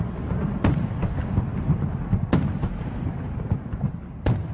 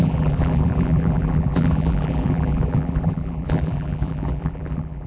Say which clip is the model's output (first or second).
second